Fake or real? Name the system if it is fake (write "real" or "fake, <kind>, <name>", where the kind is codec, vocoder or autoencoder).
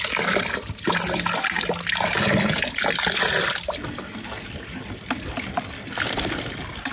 real